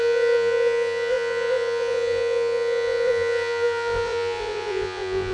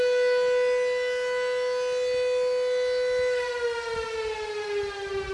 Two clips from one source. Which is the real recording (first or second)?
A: second